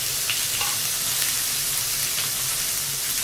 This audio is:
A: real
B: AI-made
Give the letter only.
A